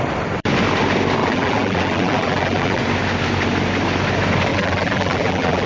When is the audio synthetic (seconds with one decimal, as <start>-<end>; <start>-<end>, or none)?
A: 1.2-2.8; 4.5-5.7

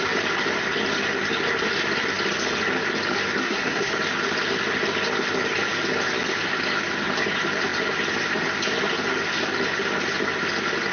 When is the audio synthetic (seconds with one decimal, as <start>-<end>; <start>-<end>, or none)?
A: 3.4-3.9

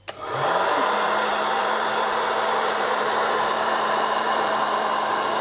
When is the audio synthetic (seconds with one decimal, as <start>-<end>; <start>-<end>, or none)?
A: 1.3-4.5

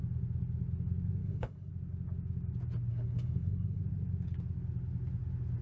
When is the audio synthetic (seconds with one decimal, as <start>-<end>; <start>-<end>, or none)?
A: 1.2-1.7; 2.9-3.8